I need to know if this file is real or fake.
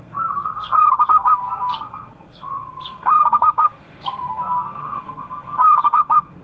fake